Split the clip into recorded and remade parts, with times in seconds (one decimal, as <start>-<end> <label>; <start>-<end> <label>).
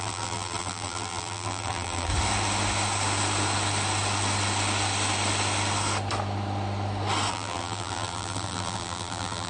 0.0-2.1 remade; 2.1-7.3 recorded; 7.3-9.5 remade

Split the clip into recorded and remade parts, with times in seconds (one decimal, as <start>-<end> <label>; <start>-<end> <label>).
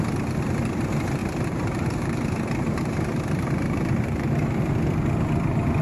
0.0-1.2 recorded; 1.2-4.7 remade; 4.7-5.8 recorded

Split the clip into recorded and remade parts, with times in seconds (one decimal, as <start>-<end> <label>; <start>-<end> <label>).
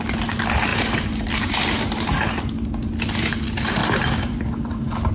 0.0-0.7 recorded; 0.7-2.4 remade; 2.4-3.8 recorded; 3.8-5.1 remade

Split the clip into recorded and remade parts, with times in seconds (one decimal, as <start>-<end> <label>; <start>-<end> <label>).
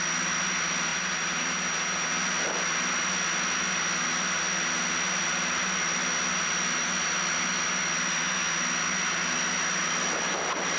0.0-0.9 recorded; 0.9-2.1 remade; 2.1-10.8 recorded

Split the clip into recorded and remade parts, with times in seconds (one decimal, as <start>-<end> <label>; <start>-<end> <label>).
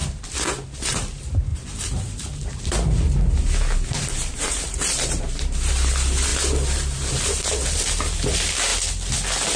0.0-0.7 recorded; 0.7-8.7 remade; 8.7-9.6 recorded